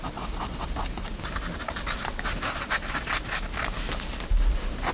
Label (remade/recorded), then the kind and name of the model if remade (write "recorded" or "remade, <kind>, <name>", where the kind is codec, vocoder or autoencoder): recorded